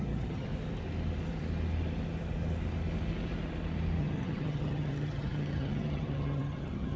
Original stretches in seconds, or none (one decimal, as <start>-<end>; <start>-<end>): 0.5-4.0